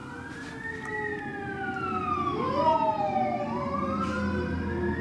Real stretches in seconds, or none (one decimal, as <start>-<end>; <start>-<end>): 0.0-5.0